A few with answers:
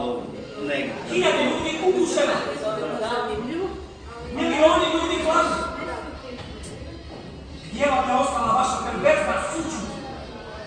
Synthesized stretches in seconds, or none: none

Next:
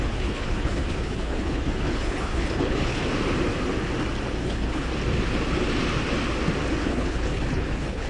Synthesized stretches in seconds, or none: 0.0-3.0 (codec, HILCodec); 4.4-4.9; 6.8-8.1

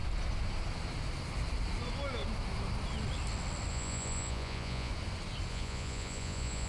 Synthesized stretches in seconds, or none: 3.7-4.9 (vocoder, Vocos); 5.5-6.7

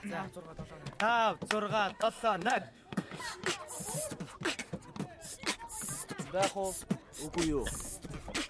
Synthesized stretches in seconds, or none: 1.9-3.2 (codec, SNAC)

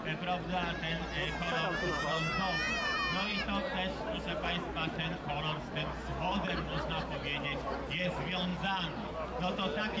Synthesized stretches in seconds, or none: none

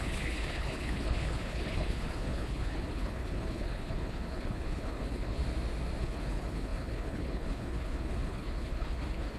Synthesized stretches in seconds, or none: 0.0-5.4 (codec, HILCodec); 6.0-9.4

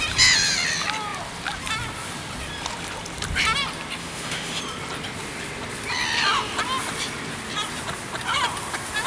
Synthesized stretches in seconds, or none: 4.0-4.6 (autoencoder, DAC-VAE)